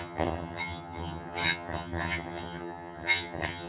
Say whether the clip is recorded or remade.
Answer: remade